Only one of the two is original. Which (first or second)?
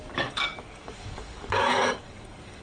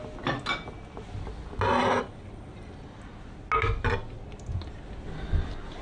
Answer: second